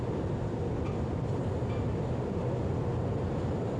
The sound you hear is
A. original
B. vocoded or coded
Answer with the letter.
A